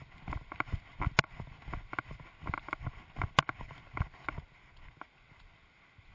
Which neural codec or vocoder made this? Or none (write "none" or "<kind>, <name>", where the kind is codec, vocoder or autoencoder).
none